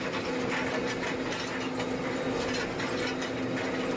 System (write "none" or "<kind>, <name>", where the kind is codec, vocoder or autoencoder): none